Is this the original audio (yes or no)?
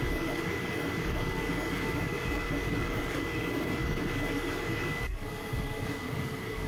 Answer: no